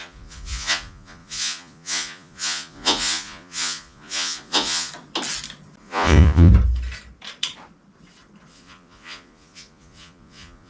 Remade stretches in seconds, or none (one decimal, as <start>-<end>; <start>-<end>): 0.0-4.9; 5.8-6.5; 8.5-10.7